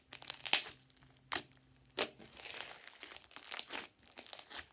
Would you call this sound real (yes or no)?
yes